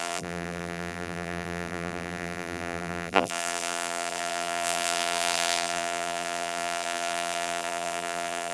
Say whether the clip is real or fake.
fake